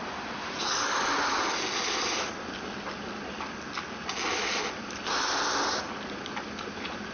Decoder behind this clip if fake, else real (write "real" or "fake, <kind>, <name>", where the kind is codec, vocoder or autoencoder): real